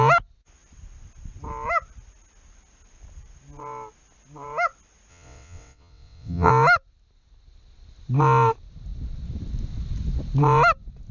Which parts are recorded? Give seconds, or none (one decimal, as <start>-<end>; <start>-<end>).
0.0-5.1; 6.5-11.1